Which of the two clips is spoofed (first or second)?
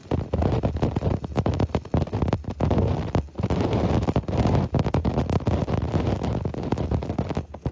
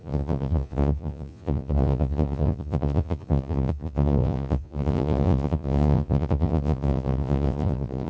second